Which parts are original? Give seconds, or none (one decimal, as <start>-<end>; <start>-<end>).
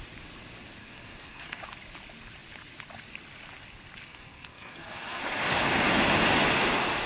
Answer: 0.0-0.8; 1.6-4.1; 5.2-7.1